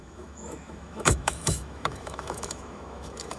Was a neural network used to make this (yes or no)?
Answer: yes